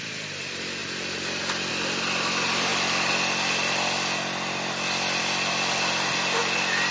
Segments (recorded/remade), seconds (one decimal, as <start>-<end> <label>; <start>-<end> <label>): 0.0-6.9 recorded